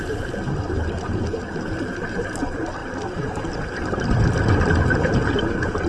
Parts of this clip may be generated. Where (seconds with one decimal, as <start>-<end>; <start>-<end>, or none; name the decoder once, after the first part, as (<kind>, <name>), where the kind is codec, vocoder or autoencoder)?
none